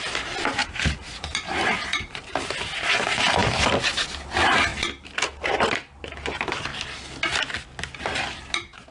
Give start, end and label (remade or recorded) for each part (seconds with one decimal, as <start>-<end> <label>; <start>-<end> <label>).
0.0-0.6 recorded; 0.6-2.2 remade; 2.2-8.9 recorded